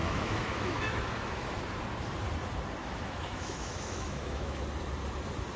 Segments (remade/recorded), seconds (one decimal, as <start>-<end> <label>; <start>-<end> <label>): 0.0-1.6 remade; 1.6-2.8 recorded; 2.8-4.6 remade; 4.6-5.6 recorded